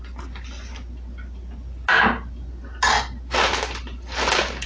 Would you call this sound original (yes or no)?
yes